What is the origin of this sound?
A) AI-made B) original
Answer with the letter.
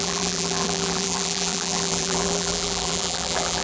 A